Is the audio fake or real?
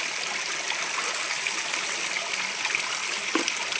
real